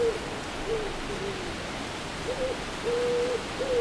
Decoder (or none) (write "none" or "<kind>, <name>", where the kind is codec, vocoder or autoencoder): none